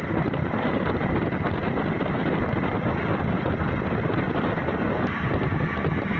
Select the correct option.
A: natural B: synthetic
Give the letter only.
A